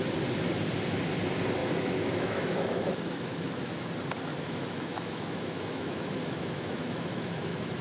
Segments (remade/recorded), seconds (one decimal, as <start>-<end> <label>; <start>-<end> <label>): 0.0-1.6 recorded; 1.6-3.9 remade; 3.9-4.3 recorded; 4.3-7.8 remade